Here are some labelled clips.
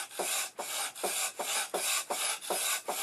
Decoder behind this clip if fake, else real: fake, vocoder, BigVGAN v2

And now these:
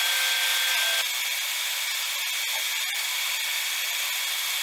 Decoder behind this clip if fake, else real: real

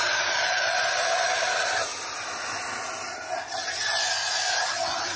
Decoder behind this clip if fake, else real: real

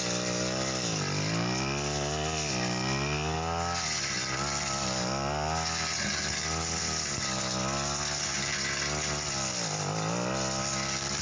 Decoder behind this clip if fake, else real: real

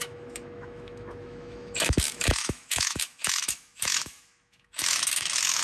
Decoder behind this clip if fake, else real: fake, autoencoder, DAC-VAE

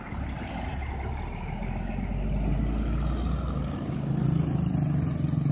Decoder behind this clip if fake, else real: real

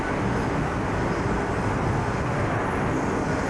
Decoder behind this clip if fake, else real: real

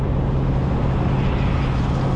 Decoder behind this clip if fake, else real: real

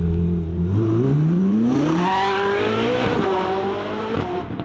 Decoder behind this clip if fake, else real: fake, vocoder, BigVGAN v2